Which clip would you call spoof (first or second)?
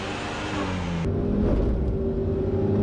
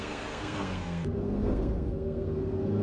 second